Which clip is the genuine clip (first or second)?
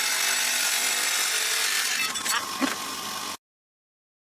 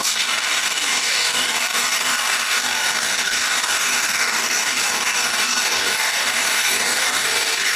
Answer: first